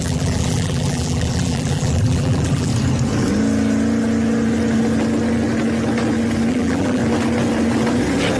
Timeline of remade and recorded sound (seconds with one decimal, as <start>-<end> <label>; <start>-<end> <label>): 0.0-2.7 remade; 2.7-6.5 recorded; 6.5-7.0 remade; 7.0-8.4 recorded